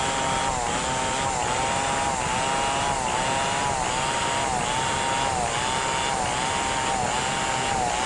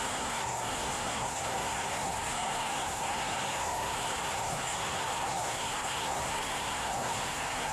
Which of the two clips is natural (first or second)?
first